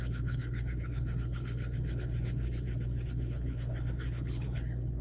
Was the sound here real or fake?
fake